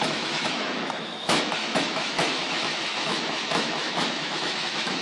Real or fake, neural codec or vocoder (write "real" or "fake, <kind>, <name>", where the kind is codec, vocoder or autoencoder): fake, autoencoder, DAC-VAE